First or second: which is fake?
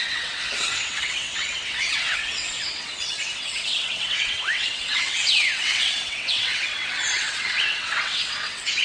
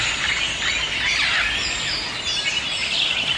first